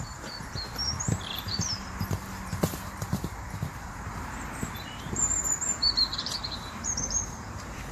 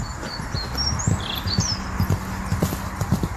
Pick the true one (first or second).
second